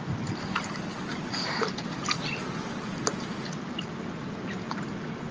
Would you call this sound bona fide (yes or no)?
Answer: yes